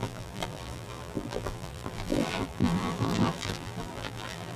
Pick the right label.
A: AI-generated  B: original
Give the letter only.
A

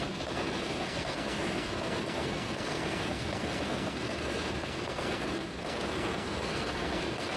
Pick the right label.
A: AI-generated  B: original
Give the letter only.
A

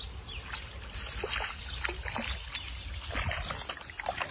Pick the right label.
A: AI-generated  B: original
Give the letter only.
B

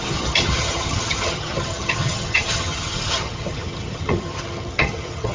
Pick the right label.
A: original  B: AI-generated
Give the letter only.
B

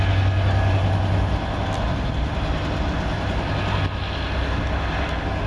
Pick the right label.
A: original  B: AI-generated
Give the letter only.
A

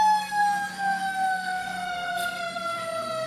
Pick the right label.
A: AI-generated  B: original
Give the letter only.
A